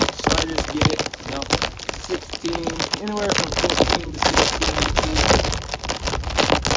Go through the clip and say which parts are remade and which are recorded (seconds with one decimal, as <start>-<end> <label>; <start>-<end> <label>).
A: 0.0-6.8 recorded